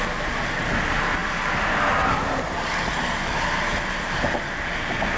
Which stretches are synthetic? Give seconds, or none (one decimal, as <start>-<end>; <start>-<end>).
none